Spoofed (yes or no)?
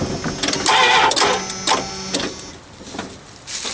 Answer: no